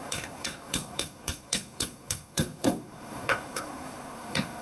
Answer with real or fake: fake